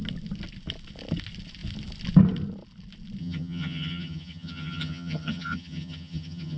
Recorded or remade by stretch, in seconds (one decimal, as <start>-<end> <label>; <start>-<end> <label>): 0.0-3.2 recorded; 3.2-6.6 remade